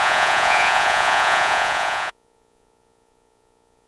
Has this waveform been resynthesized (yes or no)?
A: yes